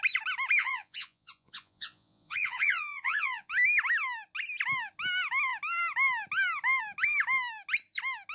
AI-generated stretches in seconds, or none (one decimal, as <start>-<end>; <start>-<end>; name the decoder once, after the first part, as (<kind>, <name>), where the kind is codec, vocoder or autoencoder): 0.6-3.5 (vocoder, Vocos)